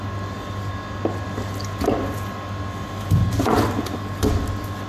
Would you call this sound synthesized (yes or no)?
no